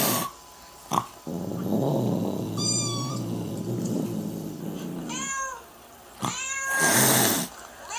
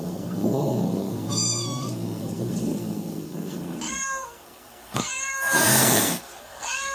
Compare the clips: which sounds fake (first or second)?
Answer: second